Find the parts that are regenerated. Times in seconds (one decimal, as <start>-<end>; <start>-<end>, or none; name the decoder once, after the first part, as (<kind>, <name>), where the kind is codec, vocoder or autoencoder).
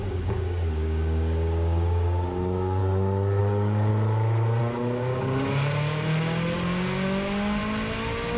0.0-2.8 (codec, DAC); 3.4-3.9; 4.6-7.6